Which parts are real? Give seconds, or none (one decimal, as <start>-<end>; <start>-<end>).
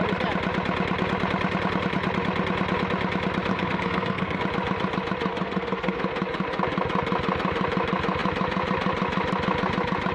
0.0-3.5; 4.4-5.3; 6.0-10.1